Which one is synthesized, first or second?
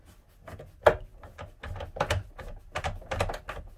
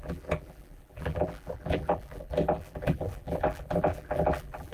second